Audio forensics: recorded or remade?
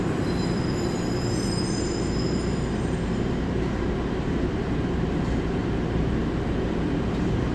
remade